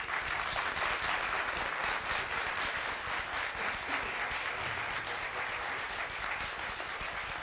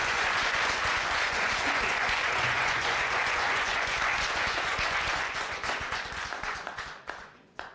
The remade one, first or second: second